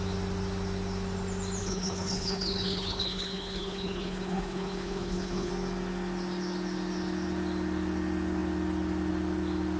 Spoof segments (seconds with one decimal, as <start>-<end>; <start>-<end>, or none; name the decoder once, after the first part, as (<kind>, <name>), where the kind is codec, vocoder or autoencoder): 1.6-5.5 (codec, HILCodec)